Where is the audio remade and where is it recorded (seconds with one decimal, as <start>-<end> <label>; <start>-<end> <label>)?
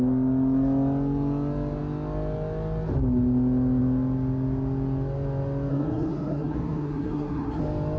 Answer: 0.0-5.7 recorded; 5.7-7.6 remade; 7.6-8.0 recorded